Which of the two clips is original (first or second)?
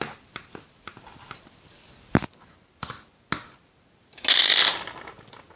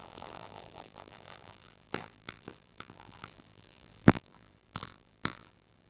first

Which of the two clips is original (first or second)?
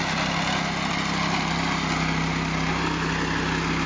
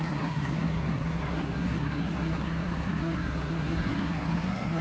first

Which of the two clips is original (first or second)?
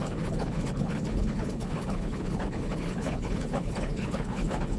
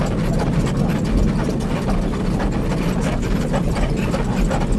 second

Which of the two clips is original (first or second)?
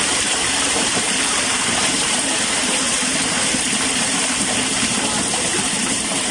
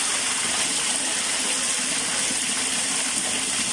second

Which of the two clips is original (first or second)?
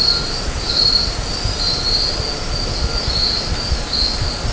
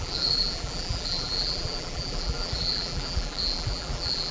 first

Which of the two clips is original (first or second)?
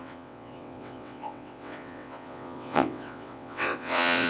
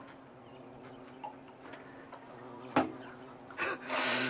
second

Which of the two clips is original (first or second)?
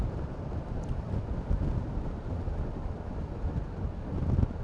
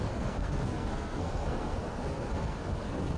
first